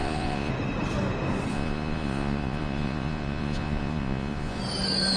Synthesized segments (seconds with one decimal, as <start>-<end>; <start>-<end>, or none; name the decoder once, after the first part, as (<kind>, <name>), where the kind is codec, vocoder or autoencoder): 0.0-0.5 (vocoder, Vocos); 1.5-4.6